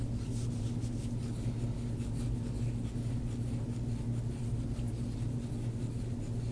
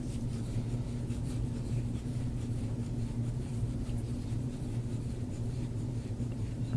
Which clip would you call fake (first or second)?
second